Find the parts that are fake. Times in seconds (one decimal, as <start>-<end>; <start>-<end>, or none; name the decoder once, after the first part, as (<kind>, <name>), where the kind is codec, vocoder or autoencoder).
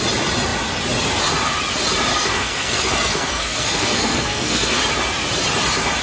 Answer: 2.1-4.8 (codec, SNAC)